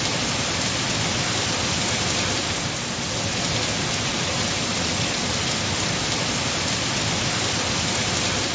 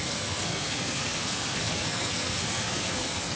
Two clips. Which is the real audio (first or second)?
first